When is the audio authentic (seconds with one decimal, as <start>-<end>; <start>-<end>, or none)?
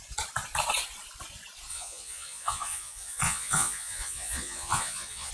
0.0-1.7